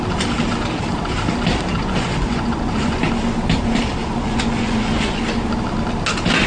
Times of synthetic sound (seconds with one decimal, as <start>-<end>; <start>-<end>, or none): 1.8-3.0; 4.0-5.2